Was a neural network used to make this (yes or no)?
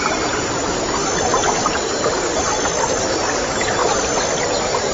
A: no